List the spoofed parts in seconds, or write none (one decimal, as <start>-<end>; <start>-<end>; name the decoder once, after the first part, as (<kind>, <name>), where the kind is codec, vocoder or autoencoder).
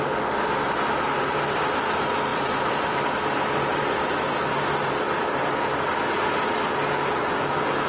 none